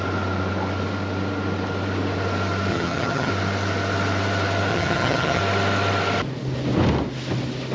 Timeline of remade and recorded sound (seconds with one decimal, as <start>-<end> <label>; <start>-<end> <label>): 0.0-2.7 recorded; 2.7-3.3 remade; 3.3-4.7 recorded; 4.7-5.4 remade; 5.4-7.7 recorded